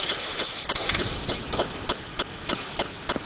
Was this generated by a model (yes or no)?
no